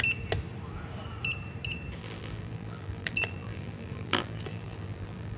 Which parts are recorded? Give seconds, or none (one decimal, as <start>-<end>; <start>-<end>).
0.0-2.0

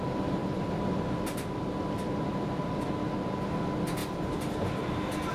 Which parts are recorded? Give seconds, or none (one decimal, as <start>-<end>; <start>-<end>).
0.0-5.3

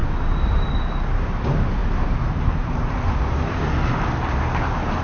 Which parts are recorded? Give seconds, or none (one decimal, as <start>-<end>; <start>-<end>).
0.7-1.8; 3.6-5.0

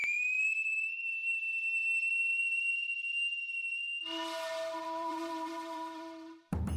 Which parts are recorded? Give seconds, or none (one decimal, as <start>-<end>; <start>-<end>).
1.4-2.3; 2.9-4.8

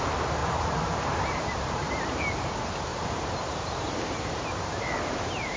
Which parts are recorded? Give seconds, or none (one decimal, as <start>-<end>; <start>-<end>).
0.0-0.4; 2.2-2.9

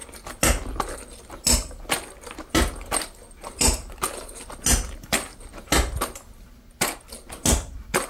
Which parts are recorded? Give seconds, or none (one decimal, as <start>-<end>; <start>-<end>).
0.0-8.1

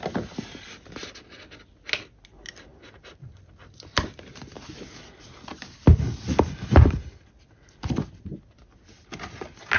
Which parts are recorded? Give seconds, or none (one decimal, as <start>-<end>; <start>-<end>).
0.0-2.7; 4.5-9.8